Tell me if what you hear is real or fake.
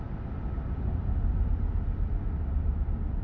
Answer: real